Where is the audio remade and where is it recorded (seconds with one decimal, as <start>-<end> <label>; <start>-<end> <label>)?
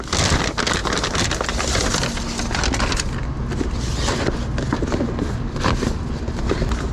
0.0-6.9 recorded